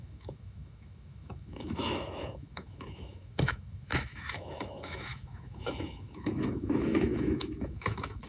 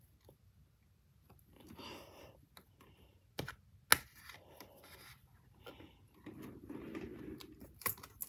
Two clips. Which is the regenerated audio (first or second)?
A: first